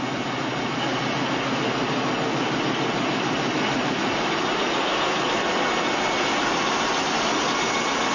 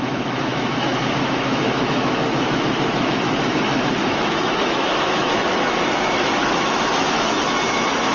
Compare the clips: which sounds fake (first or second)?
second